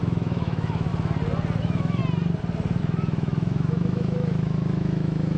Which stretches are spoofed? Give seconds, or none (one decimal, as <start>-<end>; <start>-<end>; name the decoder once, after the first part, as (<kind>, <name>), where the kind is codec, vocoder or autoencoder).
0.0-0.9 (autoencoder, DAC-VAE); 1.6-2.0; 2.8-5.4